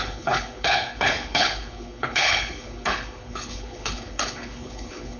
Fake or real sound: fake